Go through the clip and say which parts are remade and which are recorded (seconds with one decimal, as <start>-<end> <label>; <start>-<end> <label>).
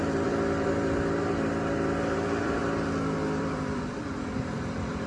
0.0-2.6 remade; 2.6-3.4 recorded; 3.4-5.1 remade